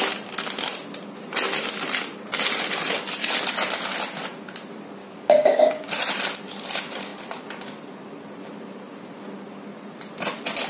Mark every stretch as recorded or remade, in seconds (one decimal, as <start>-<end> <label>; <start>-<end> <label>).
0.0-5.0 recorded; 5.0-5.9 remade; 5.9-10.7 recorded